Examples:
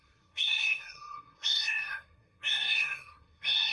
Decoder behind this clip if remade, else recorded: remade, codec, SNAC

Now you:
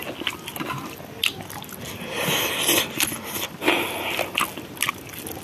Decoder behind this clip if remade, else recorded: recorded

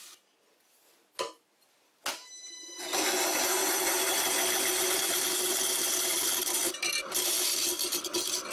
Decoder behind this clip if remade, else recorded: recorded